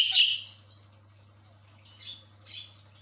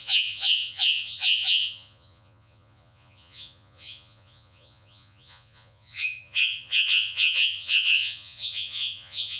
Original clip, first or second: first